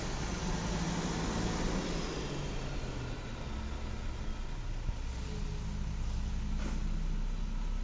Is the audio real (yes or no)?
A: yes